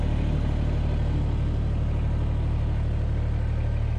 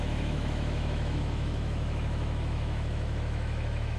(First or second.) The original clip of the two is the first